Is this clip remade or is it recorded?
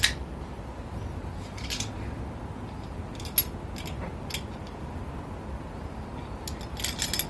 recorded